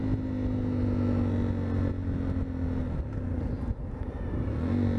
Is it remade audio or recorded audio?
recorded